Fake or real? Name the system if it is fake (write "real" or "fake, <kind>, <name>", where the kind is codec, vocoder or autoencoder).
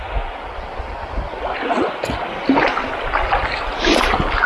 real